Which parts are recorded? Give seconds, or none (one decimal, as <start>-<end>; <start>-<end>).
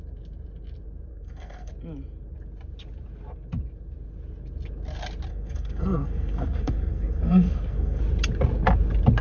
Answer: 0.0-1.1; 1.7-5.3; 8.0-9.2